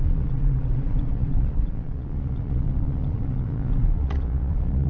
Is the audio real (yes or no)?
no